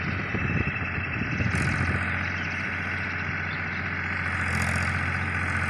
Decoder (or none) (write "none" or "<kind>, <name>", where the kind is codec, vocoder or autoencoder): none